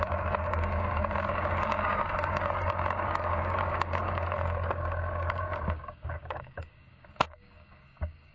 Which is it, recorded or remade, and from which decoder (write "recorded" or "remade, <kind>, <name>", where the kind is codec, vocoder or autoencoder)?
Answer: remade, codec, DAC